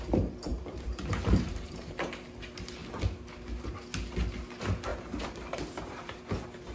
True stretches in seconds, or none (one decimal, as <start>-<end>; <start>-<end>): 0.0-0.5; 2.1-4.9; 6.2-6.7